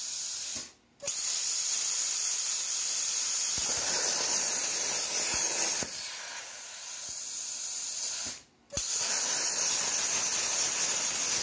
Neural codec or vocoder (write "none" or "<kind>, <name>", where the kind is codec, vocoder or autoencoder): none